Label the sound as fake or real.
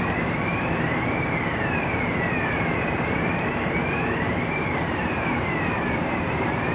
fake